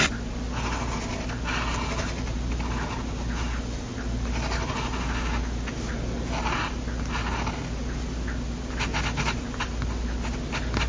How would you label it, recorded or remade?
recorded